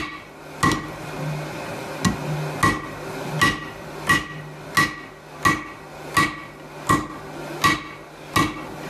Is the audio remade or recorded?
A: recorded